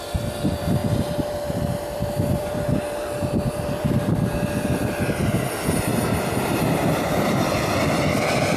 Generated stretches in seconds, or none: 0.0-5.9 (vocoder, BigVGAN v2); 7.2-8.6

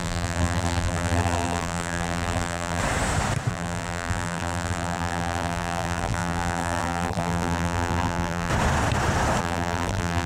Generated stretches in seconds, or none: 0.0-2.8 (vocoder, BigVGAN v2); 3.5-8.5; 9.4-10.3